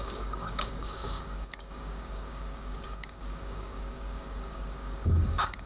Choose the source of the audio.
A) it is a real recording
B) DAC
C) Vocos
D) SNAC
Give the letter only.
B